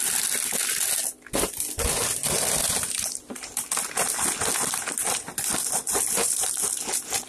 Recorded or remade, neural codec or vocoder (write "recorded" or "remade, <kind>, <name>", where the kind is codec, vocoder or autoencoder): recorded